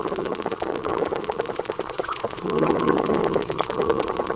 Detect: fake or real fake